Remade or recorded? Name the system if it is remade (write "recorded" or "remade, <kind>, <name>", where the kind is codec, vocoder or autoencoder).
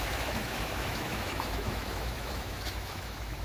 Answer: remade, autoencoder, DAC-VAE